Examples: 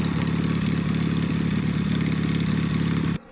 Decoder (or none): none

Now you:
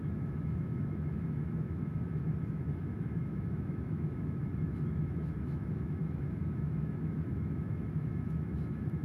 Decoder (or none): autoencoder, DAC-VAE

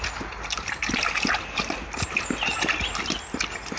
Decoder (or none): none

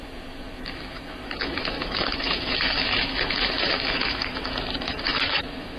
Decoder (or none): autoencoder, DAC-VAE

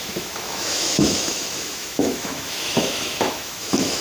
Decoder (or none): autoencoder, DAC-VAE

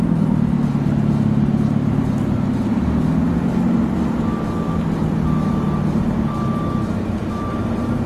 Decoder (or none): none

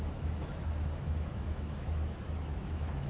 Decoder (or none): autoencoder, DAC-VAE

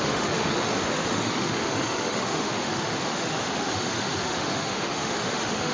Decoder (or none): autoencoder, DAC-VAE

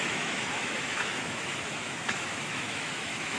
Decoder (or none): autoencoder, DAC-VAE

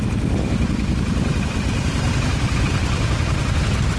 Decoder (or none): none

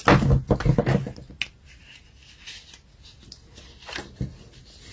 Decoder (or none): none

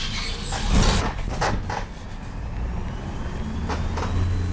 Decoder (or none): none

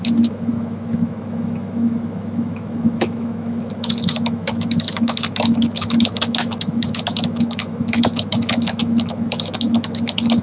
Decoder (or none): autoencoder, DAC-VAE